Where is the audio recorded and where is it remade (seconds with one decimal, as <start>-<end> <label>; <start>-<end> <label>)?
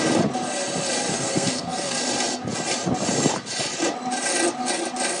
0.0-1.1 recorded; 1.1-2.0 remade; 2.0-5.2 recorded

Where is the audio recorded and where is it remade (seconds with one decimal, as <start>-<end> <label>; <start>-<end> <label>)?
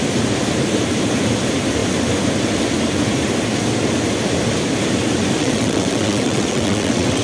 0.0-5.4 recorded; 5.4-7.2 remade